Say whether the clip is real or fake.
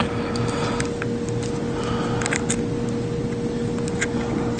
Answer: real